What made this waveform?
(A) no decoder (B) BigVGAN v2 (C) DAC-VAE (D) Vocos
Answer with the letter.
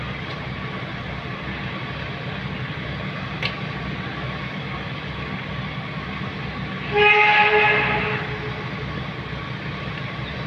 A